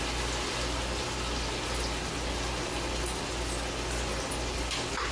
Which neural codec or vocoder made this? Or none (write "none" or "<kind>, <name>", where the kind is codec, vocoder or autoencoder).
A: none